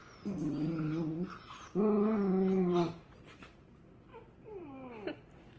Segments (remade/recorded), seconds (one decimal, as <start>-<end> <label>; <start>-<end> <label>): 0.0-3.4 remade; 3.4-4.1 recorded; 4.1-4.7 remade; 4.7-5.6 recorded